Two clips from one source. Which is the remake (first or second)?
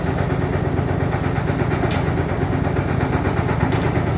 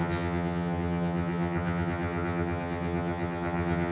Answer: second